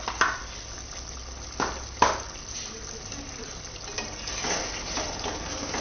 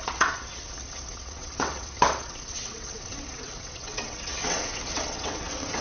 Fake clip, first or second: second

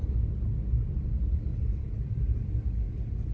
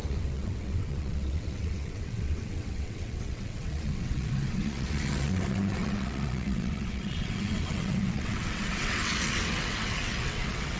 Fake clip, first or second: second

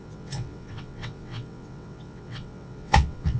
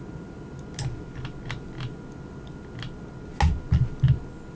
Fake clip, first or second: first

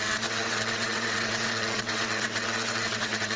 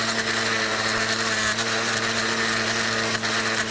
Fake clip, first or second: first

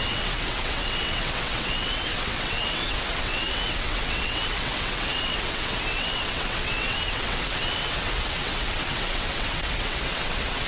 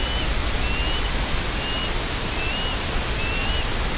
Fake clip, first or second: first